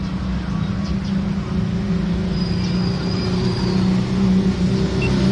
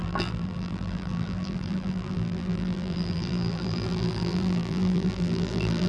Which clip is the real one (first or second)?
first